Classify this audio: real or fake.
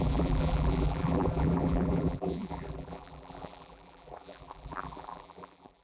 fake